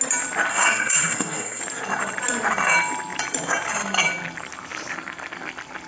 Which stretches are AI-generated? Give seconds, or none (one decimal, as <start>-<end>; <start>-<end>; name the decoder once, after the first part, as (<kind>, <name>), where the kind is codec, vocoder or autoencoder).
0.5-1.6 (codec, SNAC)